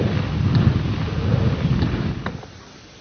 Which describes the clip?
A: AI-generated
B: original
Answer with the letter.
B